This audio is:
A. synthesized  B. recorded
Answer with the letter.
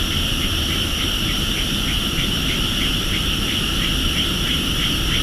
B